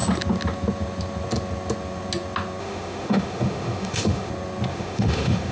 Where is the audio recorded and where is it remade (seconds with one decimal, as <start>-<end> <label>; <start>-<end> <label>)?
0.0-2.6 recorded; 2.6-4.3 remade; 4.3-4.7 recorded; 4.7-5.5 remade